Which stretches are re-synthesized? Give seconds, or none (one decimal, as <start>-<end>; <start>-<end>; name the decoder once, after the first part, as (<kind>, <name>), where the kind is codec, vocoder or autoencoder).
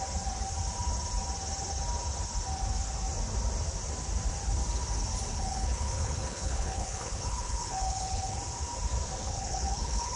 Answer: 5.3-8.4 (codec, HILCodec); 9.2-10.2